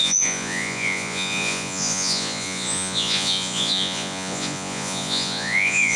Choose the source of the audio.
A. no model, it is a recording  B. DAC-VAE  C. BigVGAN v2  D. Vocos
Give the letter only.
D